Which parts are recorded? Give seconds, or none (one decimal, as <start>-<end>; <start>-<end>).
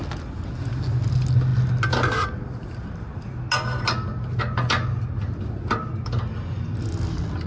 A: 0.0-7.5